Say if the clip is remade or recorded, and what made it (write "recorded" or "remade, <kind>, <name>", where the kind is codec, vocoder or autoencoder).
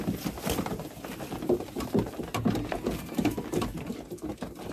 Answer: recorded